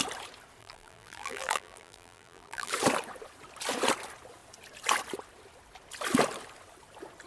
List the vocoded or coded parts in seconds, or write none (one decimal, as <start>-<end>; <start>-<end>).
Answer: 0.6-2.7